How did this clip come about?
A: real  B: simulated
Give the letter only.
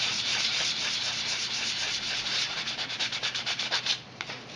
B